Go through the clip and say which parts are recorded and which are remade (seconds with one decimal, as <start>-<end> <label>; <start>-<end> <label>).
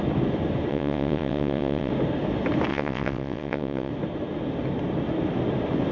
0.0-0.7 recorded; 0.7-1.9 remade; 1.9-2.7 recorded; 2.7-3.9 remade; 3.9-5.9 recorded